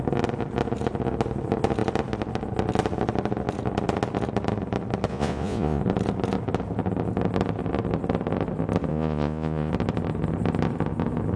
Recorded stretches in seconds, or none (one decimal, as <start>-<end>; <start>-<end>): 0.0-5.1; 5.8-8.9; 9.7-11.4